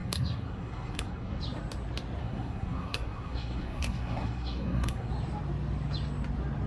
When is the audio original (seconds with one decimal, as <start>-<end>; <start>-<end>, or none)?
1.4-2.2; 5.1-6.7